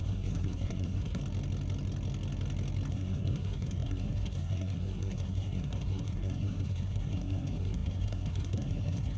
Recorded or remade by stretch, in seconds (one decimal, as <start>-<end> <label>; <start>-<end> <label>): 0.0-1.2 remade; 1.2-2.9 recorded; 2.9-9.2 remade